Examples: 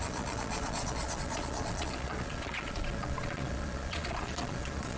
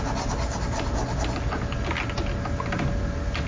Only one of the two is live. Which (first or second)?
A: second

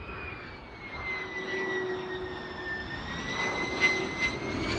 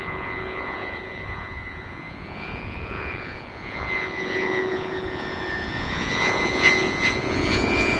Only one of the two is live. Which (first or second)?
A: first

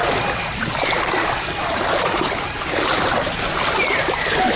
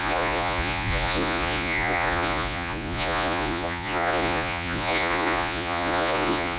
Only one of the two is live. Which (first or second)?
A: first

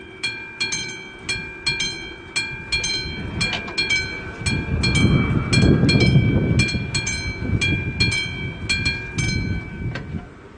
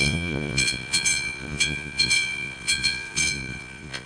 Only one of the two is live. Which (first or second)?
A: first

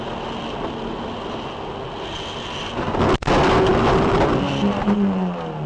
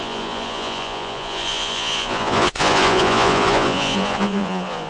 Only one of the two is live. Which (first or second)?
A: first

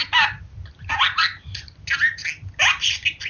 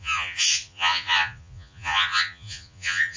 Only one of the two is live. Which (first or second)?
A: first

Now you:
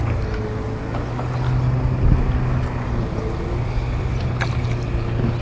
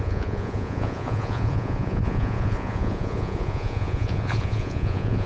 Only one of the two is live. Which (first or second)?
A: first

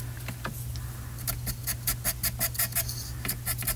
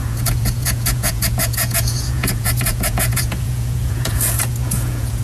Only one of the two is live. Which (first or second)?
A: first